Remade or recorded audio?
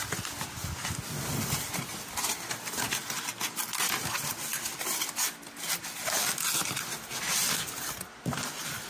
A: recorded